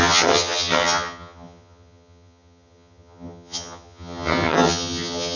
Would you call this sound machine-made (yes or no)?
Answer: yes